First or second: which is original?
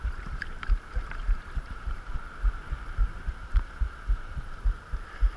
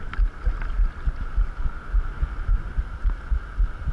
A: second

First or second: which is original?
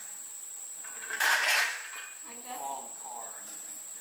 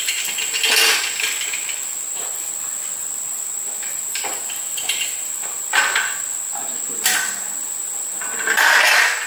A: second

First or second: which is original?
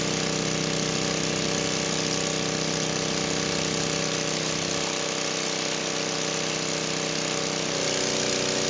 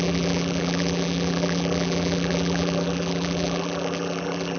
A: first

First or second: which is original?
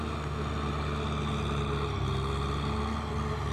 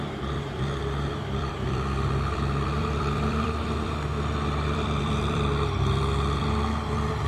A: first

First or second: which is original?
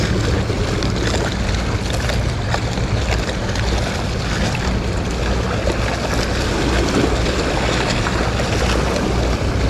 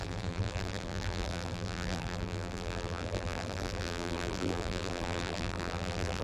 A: first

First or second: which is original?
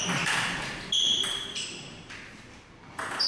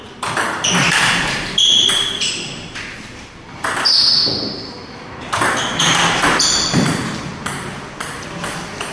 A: first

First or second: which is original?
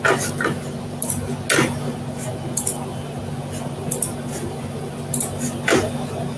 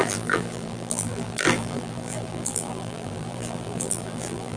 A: first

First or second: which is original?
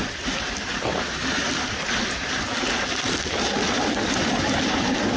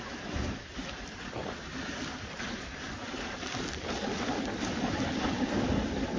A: first